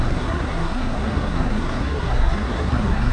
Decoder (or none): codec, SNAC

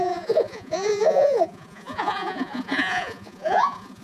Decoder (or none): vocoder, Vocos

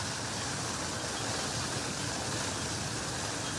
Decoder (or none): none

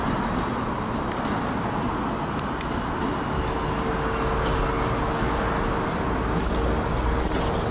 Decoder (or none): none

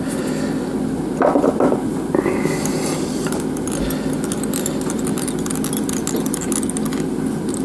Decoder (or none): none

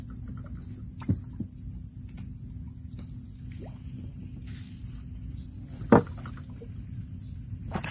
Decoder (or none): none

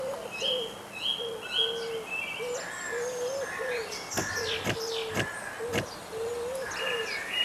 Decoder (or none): none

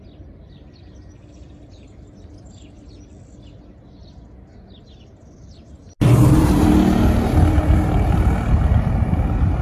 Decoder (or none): none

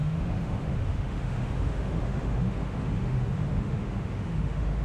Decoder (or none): autoencoder, DAC-VAE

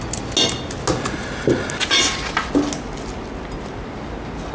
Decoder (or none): none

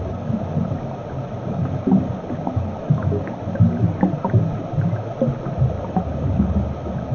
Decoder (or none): none